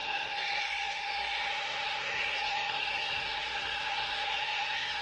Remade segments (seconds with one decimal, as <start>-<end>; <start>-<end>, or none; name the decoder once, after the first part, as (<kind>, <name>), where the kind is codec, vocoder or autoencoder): 0.0-5.0 (codec, SNAC)